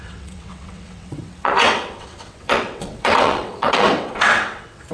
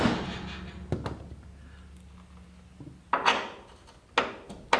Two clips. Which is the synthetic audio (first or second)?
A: first